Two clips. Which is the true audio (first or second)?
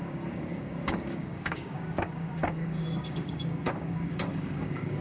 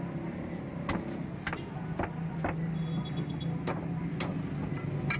second